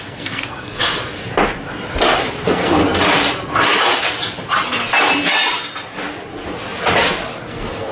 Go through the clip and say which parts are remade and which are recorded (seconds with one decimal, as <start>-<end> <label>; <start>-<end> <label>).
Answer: 0.0-0.8 remade; 0.8-2.4 recorded; 2.4-2.8 remade; 2.8-7.5 recorded; 7.5-7.9 remade